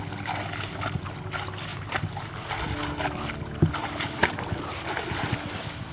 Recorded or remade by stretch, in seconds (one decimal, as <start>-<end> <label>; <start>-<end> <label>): 0.0-1.7 recorded; 1.7-2.3 remade; 2.3-3.8 recorded; 3.8-4.3 remade; 4.3-5.9 recorded